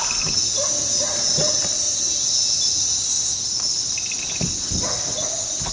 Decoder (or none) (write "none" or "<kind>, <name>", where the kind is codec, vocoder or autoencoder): none